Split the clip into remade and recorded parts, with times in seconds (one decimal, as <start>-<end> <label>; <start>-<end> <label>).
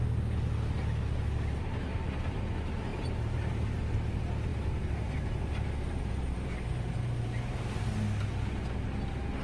0.0-1.9 recorded; 1.9-2.5 remade; 2.5-2.9 recorded; 2.9-4.0 remade; 4.0-4.5 recorded; 4.5-7.6 remade; 7.6-9.4 recorded